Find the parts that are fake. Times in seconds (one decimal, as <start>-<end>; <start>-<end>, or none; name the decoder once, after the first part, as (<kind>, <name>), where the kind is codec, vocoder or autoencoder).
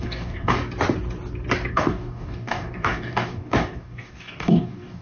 0.0-0.6 (codec, DAC); 1.7-5.0